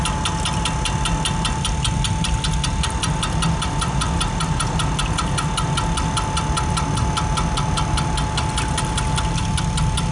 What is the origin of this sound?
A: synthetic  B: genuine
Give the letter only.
B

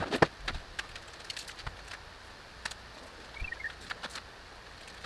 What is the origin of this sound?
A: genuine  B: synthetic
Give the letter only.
A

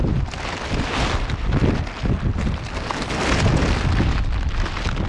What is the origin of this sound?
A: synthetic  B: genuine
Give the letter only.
B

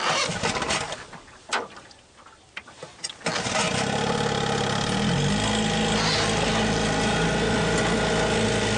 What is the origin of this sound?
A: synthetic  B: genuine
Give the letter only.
B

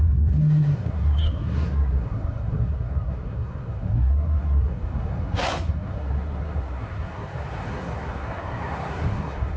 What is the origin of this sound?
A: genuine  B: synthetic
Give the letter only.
B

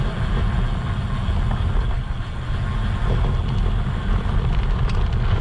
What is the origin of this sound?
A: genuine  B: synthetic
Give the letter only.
A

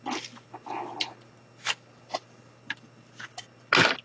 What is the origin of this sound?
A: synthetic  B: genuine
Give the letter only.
B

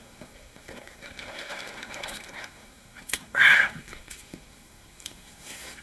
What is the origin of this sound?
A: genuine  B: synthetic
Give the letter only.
B